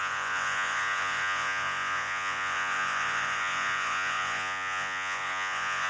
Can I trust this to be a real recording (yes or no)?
no